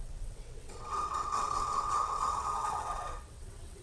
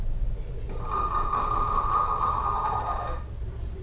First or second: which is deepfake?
first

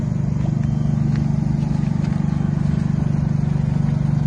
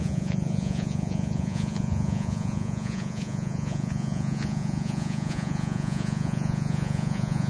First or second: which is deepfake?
second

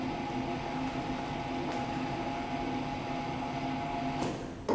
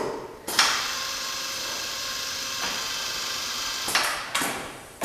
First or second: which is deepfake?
second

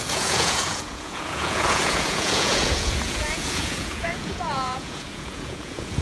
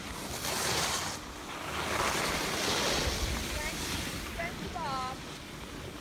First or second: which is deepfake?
first